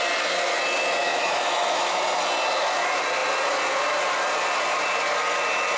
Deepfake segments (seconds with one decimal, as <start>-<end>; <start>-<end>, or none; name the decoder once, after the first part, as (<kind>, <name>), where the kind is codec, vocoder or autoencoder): 1.0-2.0 (autoencoder, DAC-VAE)